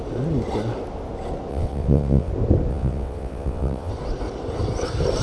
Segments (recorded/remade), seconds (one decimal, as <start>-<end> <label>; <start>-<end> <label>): 0.0-1.5 recorded; 1.5-2.3 remade; 2.3-2.7 recorded; 2.7-3.9 remade; 3.9-5.2 recorded